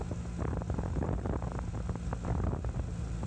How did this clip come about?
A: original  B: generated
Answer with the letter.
A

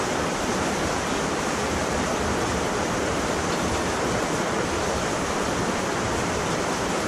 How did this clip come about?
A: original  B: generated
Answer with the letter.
B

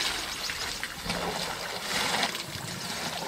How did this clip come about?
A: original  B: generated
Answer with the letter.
A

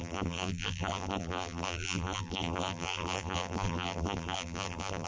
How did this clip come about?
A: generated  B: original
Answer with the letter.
A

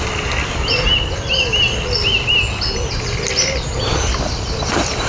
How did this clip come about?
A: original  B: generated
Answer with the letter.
A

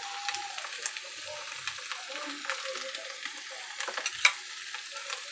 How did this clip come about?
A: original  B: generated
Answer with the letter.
A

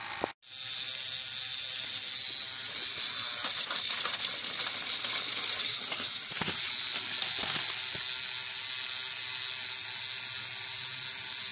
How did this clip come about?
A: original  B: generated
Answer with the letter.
A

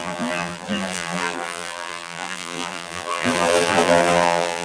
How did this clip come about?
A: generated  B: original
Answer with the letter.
A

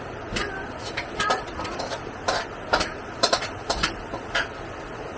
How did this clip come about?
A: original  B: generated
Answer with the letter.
A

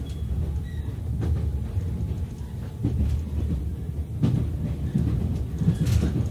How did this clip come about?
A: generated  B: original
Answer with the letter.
B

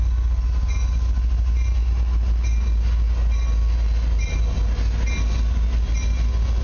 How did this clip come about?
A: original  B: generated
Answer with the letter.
A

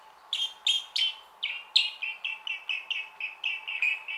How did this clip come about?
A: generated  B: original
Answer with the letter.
B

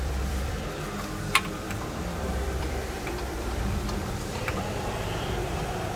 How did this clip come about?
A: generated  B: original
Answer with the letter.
A